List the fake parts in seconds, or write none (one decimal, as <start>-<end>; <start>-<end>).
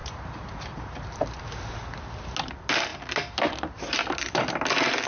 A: 0.0-1.7